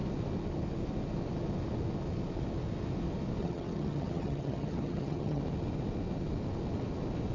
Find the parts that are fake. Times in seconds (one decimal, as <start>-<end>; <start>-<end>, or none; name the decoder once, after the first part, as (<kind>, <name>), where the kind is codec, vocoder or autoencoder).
3.4-5.4 (vocoder, HiFi-GAN)

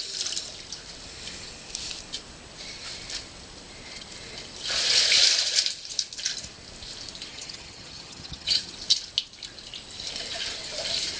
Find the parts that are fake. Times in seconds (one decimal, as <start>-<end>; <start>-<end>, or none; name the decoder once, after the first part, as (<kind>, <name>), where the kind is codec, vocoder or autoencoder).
7.3-8.7 (vocoder, HiFi-GAN)

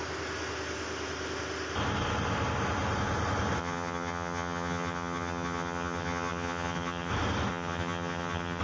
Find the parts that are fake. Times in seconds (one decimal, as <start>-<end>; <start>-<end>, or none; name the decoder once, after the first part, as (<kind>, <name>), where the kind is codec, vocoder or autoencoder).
3.6-7.1 (vocoder, HiFi-GAN); 7.5-8.6

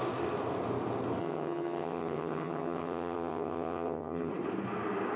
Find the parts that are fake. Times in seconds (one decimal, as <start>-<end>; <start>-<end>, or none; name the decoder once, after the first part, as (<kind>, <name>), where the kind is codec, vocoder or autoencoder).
1.2-4.3 (vocoder, HiFi-GAN)

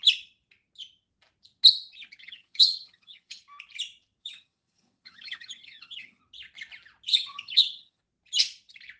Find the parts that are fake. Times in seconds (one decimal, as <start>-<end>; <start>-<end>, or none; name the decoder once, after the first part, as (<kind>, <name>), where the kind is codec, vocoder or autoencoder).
2.2-3.4 (vocoder, HiFi-GAN); 4.2-6.2; 7.1-8.0

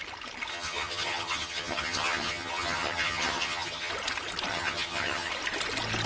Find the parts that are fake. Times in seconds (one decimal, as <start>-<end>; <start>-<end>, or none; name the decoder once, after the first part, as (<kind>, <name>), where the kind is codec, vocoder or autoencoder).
0.5-3.9 (vocoder, HiFi-GAN); 4.5-5.3

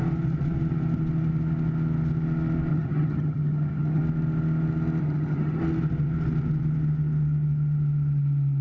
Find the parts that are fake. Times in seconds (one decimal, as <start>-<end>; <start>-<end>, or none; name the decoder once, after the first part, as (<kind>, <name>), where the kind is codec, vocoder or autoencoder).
2.7-4.0 (vocoder, HiFi-GAN); 5.0-5.6